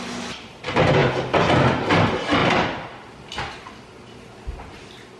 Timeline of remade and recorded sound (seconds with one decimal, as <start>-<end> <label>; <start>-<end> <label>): 0.0-5.2 recorded